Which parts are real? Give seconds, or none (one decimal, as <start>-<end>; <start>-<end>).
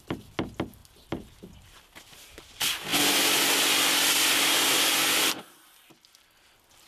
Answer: 0.0-0.8; 1.8-6.9